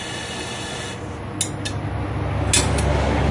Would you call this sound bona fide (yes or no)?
yes